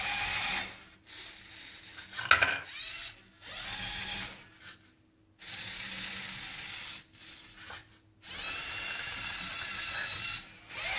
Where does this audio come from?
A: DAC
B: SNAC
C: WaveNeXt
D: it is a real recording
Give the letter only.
D